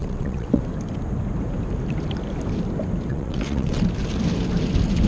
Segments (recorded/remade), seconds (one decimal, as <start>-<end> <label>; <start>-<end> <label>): 0.0-0.6 remade; 0.6-3.1 recorded; 3.1-3.8 remade; 3.8-5.1 recorded